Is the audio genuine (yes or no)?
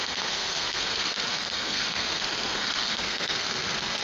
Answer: no